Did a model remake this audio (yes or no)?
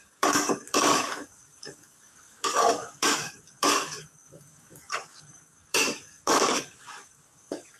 yes